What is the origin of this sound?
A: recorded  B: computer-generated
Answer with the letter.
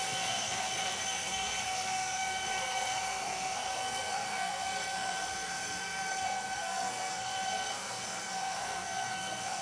B